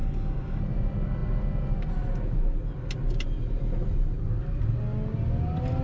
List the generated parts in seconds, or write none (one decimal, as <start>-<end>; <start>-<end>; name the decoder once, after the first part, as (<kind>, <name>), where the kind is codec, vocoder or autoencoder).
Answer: 0.0-0.6 (codec, DAC)